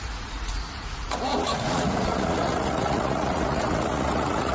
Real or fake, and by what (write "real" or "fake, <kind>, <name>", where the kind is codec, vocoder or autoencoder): fake, vocoder, Vocos